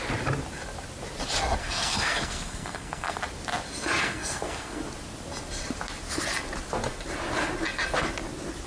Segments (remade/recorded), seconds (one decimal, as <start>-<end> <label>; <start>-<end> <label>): 0.0-1.6 recorded; 1.6-3.2 remade; 3.2-4.0 recorded; 4.0-4.8 remade; 4.8-8.7 recorded